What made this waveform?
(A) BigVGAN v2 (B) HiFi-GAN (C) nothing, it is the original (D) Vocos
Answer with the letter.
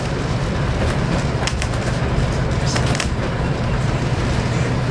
A